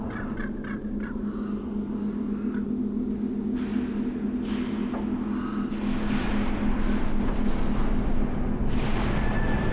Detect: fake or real real